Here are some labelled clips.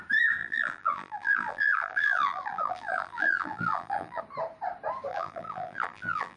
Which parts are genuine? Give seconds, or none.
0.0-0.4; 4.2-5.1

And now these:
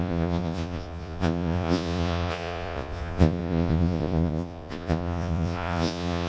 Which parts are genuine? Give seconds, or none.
none

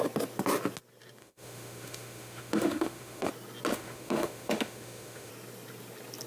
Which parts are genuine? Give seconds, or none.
0.0-1.2; 3.3-3.7; 5.3-6.3

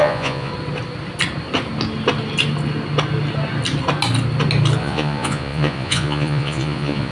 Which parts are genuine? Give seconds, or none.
0.5-4.8

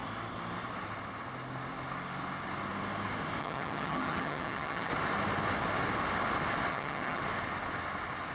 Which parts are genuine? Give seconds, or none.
0.0-3.4; 4.9-6.7; 7.2-8.3